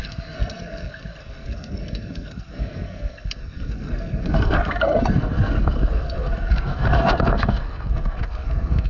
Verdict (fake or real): fake